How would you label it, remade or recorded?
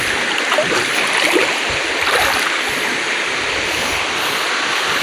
recorded